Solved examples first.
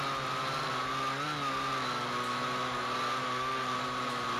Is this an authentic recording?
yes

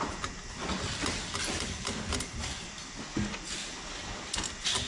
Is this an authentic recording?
no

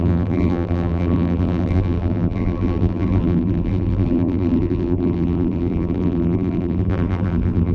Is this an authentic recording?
no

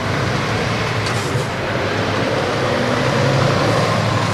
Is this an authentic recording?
no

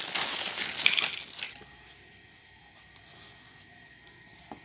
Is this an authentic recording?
yes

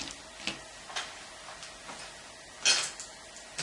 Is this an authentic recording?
yes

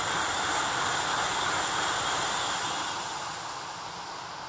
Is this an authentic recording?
yes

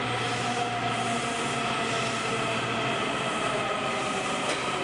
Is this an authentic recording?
yes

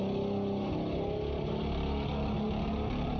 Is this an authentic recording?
yes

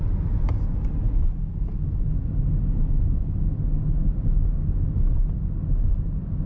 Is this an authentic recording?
yes